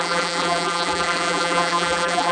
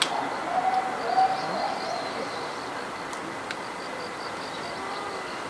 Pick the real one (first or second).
second